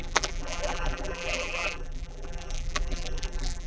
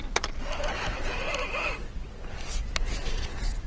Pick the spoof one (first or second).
first